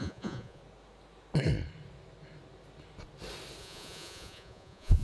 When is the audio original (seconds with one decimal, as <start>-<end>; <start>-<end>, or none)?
0.6-3.6